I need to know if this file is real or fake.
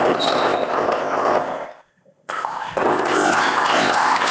fake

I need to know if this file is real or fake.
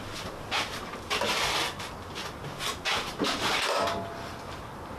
real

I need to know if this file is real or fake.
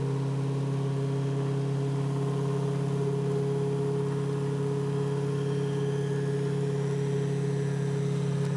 real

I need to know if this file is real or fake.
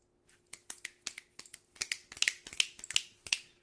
real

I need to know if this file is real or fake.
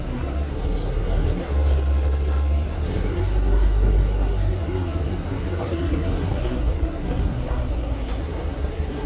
fake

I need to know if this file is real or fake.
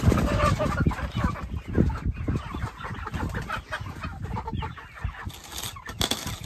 real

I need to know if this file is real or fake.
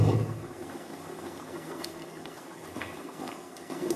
fake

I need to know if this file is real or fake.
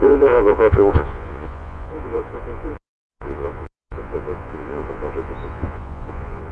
fake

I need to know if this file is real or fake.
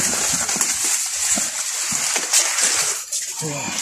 real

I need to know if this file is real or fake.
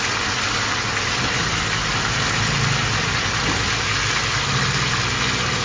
real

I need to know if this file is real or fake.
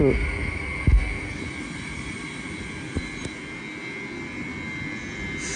real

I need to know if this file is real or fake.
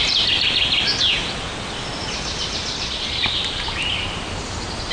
real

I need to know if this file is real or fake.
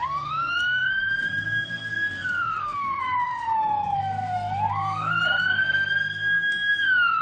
fake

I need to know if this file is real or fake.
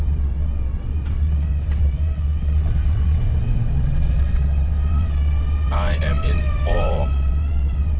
fake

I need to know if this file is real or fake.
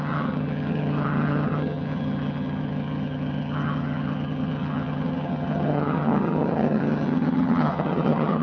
fake